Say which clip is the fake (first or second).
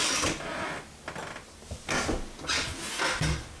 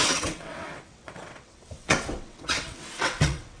second